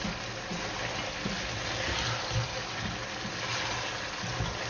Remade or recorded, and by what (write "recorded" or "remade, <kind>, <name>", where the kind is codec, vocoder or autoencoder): recorded